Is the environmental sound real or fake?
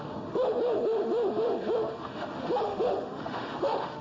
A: fake